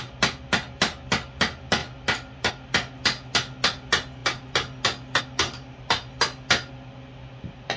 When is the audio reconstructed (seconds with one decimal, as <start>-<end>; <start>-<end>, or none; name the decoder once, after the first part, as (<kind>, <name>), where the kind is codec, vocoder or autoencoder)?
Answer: none